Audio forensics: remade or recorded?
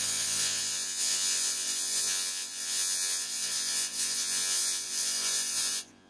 remade